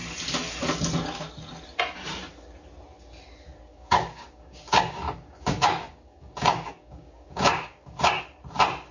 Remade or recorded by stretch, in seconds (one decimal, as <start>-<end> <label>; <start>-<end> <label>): 0.0-3.7 recorded; 3.7-8.2 remade; 8.2-8.9 recorded